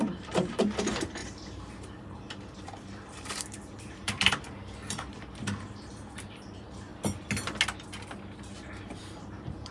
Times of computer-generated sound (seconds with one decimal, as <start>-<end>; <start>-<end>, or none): 0.0-6.9; 8.8-9.7